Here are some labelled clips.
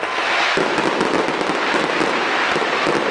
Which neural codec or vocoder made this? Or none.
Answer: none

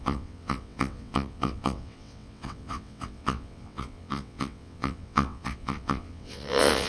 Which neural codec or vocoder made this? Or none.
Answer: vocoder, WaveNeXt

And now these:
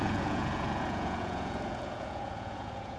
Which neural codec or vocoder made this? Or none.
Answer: vocoder, Vocos